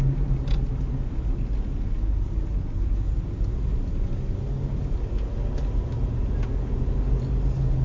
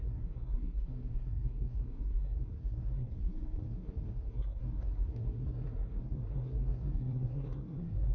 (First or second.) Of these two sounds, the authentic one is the first